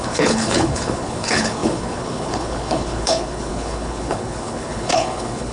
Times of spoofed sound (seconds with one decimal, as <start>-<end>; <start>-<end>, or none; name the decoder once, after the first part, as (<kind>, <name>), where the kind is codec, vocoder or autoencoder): 0.0-5.5 (codec, HILCodec)